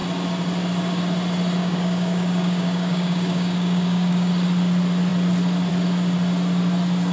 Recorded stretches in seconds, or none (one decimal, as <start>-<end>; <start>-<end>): 0.0-1.6; 4.3-7.1